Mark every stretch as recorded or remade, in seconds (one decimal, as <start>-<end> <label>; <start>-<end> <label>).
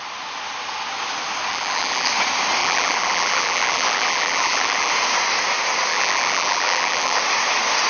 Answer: 0.0-1.5 recorded; 1.5-2.1 remade; 2.1-2.6 recorded; 2.6-4.9 remade; 4.9-5.9 recorded; 5.9-7.2 remade; 7.2-7.9 recorded